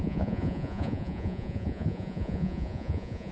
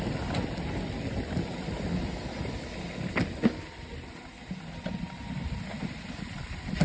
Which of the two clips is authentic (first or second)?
second